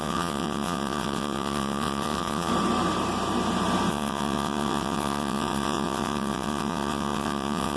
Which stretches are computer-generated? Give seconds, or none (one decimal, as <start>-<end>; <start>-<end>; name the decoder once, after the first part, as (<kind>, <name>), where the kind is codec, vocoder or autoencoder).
0.0-2.5 (vocoder, WaveNeXt); 3.9-7.8